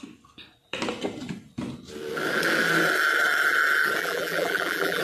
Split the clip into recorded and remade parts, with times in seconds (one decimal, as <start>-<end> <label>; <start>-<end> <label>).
0.0-4.0 recorded; 4.0-5.0 remade